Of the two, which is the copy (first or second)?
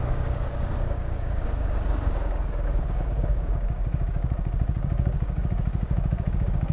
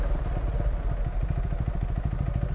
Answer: first